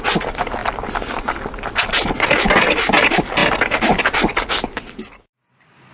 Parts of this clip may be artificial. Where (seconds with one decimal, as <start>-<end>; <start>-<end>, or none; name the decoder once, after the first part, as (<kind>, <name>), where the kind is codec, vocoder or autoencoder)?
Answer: none